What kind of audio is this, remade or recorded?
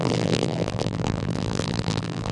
remade